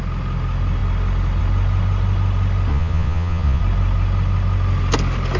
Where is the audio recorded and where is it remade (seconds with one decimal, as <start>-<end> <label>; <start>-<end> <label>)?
0.0-2.7 recorded; 2.7-3.6 remade; 3.6-5.4 recorded

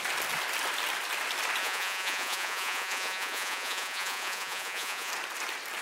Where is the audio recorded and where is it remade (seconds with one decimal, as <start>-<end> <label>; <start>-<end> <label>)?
0.0-1.6 recorded; 1.6-5.1 remade; 5.1-5.8 recorded